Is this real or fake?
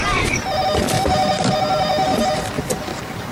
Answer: fake